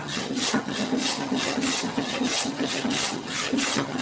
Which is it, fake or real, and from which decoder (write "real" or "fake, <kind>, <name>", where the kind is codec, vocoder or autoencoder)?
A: fake, vocoder, HiFi-GAN